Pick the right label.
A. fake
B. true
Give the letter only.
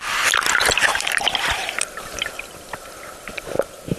A